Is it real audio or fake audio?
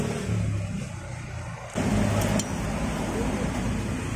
real